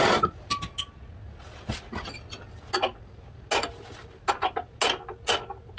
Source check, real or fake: real